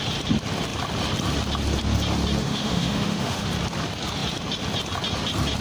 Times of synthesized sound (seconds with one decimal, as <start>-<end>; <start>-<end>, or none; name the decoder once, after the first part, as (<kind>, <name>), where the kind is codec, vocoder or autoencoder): 2.4-3.5 (autoencoder, DAC-VAE)